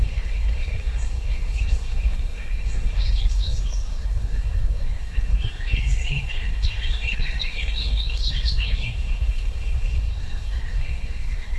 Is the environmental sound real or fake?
fake